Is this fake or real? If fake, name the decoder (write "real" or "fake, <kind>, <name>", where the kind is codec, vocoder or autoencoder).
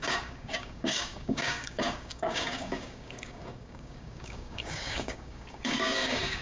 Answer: fake, codec, DAC